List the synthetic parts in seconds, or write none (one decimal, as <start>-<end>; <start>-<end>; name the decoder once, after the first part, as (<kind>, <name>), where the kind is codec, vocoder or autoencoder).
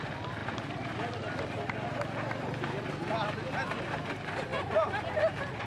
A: none